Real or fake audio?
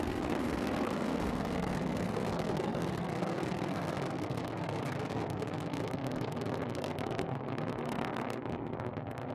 fake